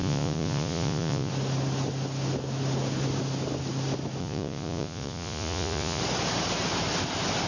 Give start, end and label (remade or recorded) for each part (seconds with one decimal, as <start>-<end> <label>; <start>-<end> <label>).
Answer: 0.0-1.3 remade; 1.3-4.2 recorded; 4.2-6.0 remade; 6.0-7.5 recorded